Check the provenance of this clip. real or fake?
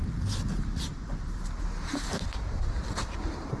fake